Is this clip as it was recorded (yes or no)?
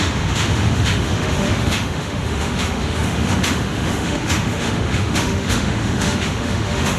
no